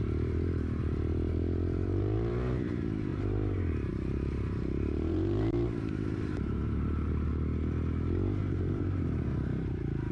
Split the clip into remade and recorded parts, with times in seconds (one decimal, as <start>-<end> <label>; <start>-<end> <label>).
0.0-7.3 remade; 7.3-8.4 recorded; 8.4-10.1 remade